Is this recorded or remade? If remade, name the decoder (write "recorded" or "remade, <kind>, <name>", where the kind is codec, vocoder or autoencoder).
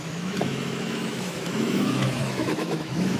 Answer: remade, autoencoder, DAC-VAE